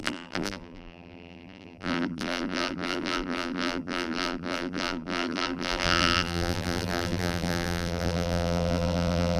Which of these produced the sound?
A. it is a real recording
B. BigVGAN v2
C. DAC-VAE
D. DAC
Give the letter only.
B